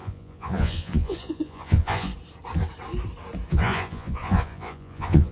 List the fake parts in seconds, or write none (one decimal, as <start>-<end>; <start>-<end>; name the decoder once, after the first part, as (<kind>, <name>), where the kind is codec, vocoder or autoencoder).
0.0-2.1 (vocoder, Vocos); 3.5-5.3